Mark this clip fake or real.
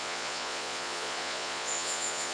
fake